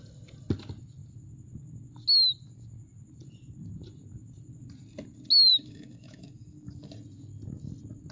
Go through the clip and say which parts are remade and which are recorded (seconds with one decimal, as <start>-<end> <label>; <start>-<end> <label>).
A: 0.0-5.5 recorded; 5.5-6.9 remade; 6.9-8.1 recorded